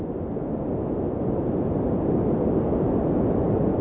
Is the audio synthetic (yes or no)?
no